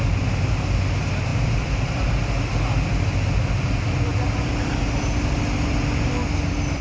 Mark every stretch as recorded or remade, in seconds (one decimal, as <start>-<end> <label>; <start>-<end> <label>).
0.0-1.3 recorded; 1.3-2.1 remade; 2.1-6.8 recorded